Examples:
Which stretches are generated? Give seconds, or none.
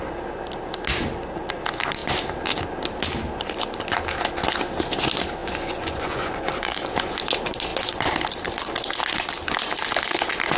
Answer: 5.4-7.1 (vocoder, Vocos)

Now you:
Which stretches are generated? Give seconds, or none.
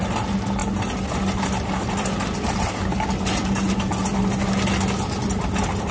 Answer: none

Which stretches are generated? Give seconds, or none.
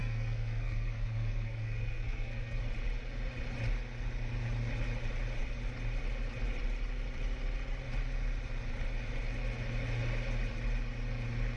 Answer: 0.0-2.6 (codec, SNAC)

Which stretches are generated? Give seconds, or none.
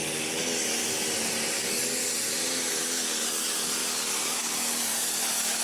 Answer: 0.0-0.8 (codec, DAC); 1.5-2.0; 2.7-5.6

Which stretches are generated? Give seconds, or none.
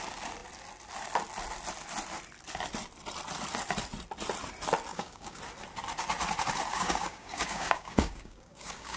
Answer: 4.9-5.4 (codec, DAC); 6.7-9.0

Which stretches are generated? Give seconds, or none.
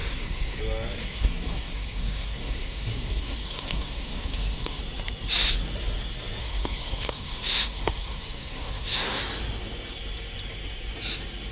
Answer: 0.0-0.6 (codec, SNAC); 1.0-4.8; 6.4-9.2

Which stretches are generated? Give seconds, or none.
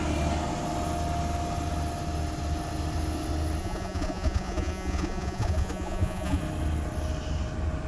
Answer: 3.6-6.4 (vocoder, Vocos)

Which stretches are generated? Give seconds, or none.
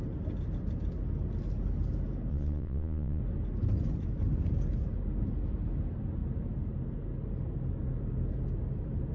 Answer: 2.3-3.2 (vocoder, Vocos)